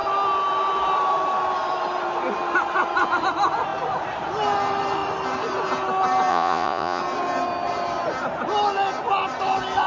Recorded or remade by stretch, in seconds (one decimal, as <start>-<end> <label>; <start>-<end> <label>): 0.0-6.3 recorded; 6.3-7.0 remade; 7.0-9.9 recorded